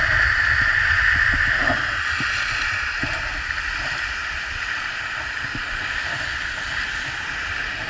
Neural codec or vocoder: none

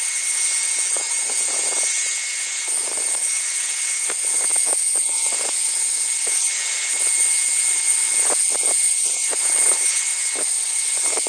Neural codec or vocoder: vocoder, Vocos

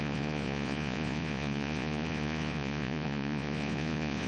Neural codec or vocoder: vocoder, Vocos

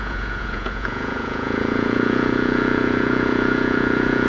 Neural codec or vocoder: vocoder, Vocos